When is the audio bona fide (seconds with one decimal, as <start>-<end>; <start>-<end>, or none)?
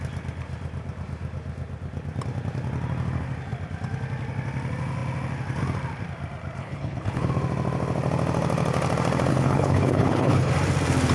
0.0-6.6; 7.3-9.3; 10.5-11.1